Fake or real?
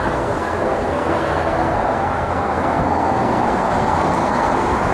fake